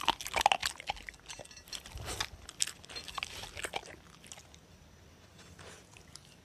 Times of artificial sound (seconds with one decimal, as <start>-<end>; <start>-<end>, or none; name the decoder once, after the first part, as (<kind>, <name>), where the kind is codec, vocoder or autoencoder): none